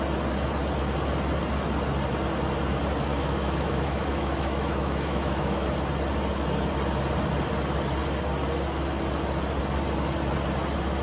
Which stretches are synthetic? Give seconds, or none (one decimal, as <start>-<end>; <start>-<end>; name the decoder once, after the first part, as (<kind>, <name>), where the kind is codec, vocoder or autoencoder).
3.1-5.7 (autoencoder, DAC-VAE)